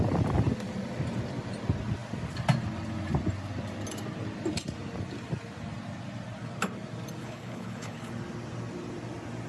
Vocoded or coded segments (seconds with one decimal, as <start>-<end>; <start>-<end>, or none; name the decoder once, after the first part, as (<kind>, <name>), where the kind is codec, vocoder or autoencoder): 7.2-8.1 (codec, HILCodec)